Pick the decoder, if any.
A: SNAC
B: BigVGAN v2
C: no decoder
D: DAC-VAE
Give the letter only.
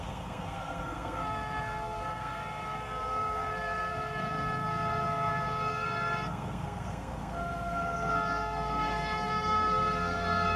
A